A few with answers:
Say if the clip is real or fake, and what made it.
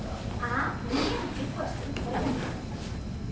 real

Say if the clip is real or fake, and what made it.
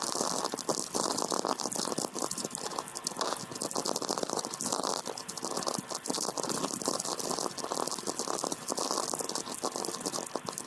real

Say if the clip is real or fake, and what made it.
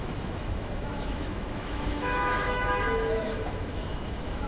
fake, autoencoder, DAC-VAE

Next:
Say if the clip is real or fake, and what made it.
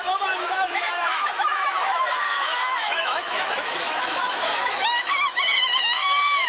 fake, autoencoder, DAC-VAE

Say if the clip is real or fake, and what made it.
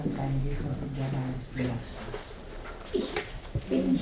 real